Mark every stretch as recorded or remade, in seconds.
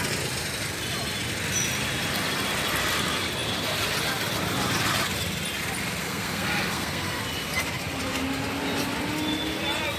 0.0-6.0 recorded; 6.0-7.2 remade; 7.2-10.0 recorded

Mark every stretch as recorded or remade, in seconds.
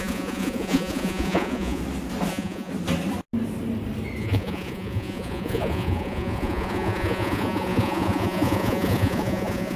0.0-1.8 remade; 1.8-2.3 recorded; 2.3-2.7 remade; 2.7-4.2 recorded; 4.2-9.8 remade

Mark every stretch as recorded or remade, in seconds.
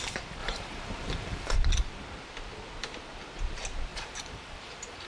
0.0-0.4 recorded; 0.4-1.6 remade; 1.6-3.9 recorded; 3.9-5.1 remade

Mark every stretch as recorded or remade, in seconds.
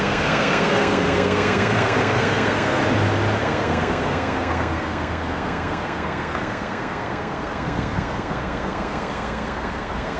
0.0-2.8 remade; 2.8-3.4 recorded; 3.4-10.2 remade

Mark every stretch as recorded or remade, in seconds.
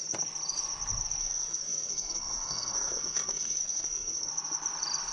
0.0-1.2 recorded; 1.2-4.3 remade; 4.3-5.1 recorded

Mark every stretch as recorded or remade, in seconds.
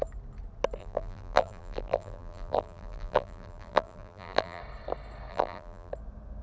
0.0-0.8 recorded; 0.8-4.6 remade; 4.6-5.3 recorded; 5.3-5.9 remade; 5.9-6.4 recorded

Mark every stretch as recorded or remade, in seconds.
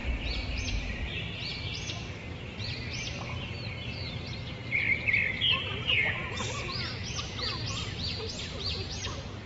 0.0-6.2 remade; 6.2-8.4 recorded; 8.4-9.5 remade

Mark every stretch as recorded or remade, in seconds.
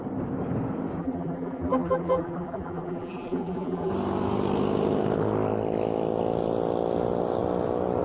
0.0-1.0 recorded; 1.0-3.9 remade; 3.9-8.0 recorded